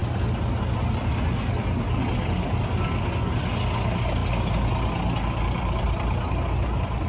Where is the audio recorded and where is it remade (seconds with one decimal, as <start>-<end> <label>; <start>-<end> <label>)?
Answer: 0.0-7.1 recorded